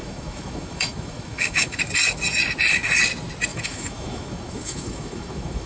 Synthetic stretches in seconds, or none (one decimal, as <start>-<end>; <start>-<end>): 0.0-1.8; 3.5-5.7